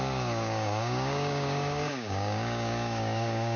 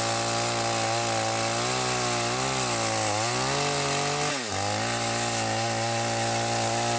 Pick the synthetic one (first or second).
first